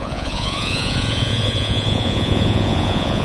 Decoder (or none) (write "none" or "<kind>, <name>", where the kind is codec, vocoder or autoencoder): vocoder, Vocos